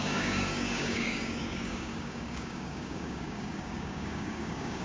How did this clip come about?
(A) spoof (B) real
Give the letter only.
A